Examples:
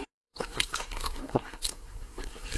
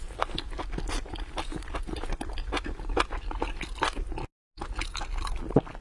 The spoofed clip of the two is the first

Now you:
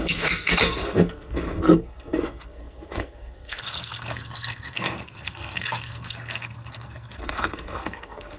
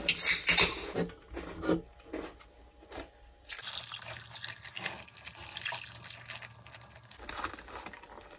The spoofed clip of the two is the first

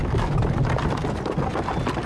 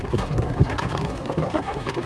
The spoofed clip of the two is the second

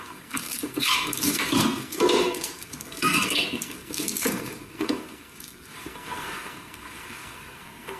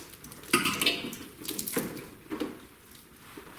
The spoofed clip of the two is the first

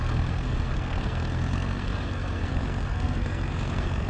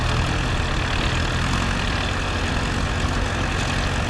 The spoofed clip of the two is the first